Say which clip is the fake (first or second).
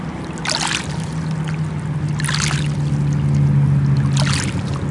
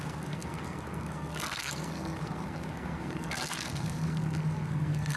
second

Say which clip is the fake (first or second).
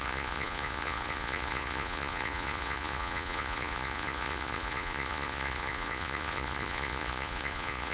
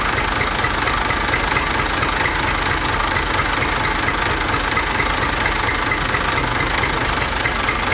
first